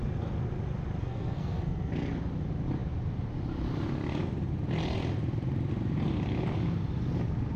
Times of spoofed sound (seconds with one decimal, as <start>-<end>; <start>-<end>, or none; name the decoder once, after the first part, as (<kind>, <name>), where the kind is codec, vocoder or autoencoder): 1.0-1.9 (codec, SNAC)